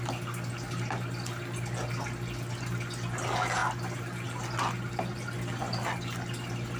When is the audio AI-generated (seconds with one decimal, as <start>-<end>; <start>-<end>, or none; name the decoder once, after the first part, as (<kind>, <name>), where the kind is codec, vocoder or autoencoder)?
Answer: none